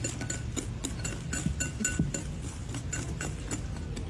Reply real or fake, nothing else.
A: real